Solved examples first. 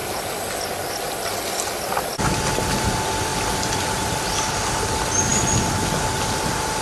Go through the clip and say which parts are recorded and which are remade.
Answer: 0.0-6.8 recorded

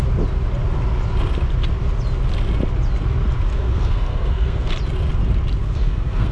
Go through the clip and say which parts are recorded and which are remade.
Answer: 0.0-3.5 recorded; 3.5-4.7 remade; 4.7-5.6 recorded; 5.6-6.3 remade

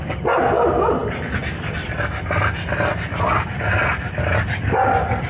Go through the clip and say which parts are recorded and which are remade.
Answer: 0.0-5.3 recorded

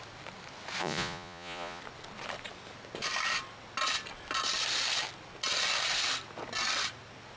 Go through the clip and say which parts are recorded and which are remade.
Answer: 0.0-0.8 recorded; 0.8-1.8 remade; 1.8-7.4 recorded

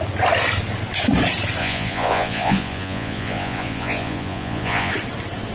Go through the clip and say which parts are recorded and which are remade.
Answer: 0.0-1.6 recorded; 1.6-4.9 remade; 4.9-5.5 recorded

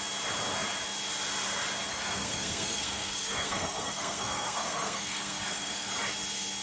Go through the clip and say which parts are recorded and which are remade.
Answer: 0.0-1.9 recorded; 1.9-5.9 remade; 5.9-6.6 recorded